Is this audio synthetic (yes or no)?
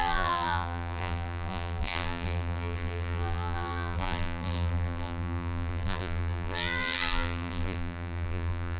yes